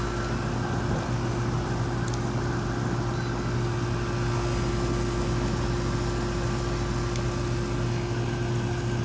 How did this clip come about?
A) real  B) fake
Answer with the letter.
A